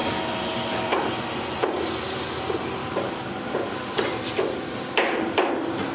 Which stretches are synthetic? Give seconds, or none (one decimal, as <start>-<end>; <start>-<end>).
2.8-4.0